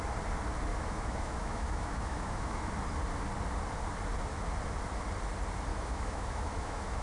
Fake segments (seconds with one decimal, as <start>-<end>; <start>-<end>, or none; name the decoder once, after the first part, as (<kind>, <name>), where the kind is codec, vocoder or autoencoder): 0.7-2.7 (autoencoder, DAC-VAE); 5.7-7.0